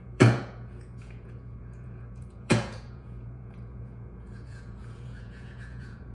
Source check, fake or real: fake